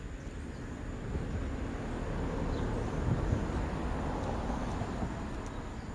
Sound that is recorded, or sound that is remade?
recorded